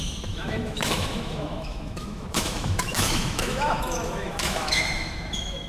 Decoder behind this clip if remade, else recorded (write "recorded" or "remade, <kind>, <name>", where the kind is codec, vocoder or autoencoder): remade, autoencoder, DAC-VAE